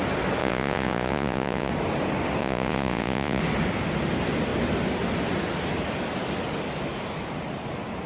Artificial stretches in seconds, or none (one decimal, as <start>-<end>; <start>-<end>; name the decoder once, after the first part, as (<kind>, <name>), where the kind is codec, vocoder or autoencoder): 0.4-1.7 (vocoder, Vocos); 2.4-3.4

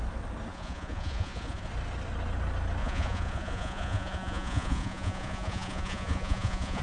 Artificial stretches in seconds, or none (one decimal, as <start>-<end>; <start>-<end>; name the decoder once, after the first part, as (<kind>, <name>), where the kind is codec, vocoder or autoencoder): 0.5-1.7 (vocoder, Vocos); 2.8-6.8

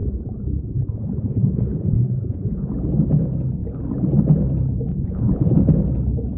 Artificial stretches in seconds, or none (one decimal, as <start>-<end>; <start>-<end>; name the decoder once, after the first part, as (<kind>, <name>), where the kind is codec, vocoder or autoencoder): 0.0-2.7 (vocoder, Vocos); 4.9-5.7

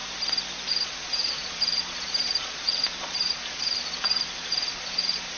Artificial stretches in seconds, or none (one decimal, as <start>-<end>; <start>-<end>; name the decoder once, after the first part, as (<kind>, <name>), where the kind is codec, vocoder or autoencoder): 0.7-5.4 (vocoder, Vocos)

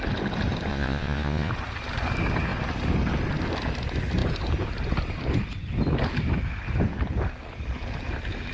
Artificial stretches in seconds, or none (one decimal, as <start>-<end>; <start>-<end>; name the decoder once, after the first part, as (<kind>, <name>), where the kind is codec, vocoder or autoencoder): 0.7-1.5 (vocoder, Vocos)